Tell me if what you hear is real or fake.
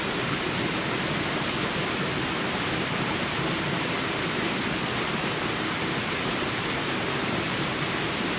real